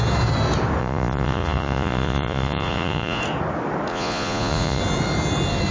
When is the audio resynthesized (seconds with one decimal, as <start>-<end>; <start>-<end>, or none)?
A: 0.8-3.2; 3.9-4.8